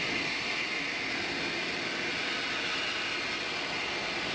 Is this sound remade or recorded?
recorded